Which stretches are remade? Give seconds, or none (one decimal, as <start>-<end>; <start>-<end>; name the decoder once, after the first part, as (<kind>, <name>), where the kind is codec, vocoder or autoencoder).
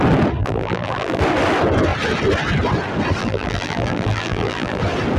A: 0.4-1.2 (vocoder, BigVGAN v2); 3.2-4.8